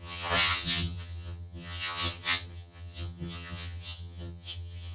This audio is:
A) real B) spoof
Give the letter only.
B